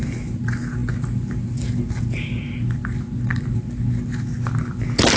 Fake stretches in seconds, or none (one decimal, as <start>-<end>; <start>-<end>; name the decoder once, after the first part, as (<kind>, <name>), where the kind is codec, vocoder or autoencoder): none